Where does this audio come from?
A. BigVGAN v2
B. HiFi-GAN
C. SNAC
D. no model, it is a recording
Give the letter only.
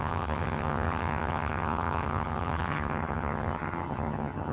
B